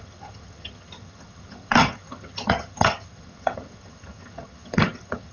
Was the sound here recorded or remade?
remade